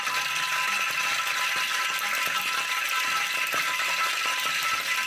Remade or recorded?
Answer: recorded